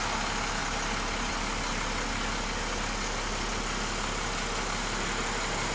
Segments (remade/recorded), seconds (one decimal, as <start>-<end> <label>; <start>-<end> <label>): 0.0-5.7 recorded